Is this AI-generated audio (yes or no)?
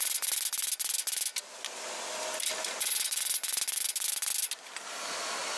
no